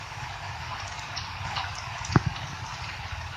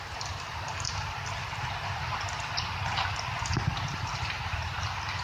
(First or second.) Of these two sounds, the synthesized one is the first